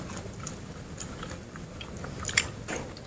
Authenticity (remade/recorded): recorded